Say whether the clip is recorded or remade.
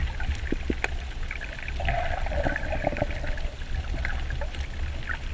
recorded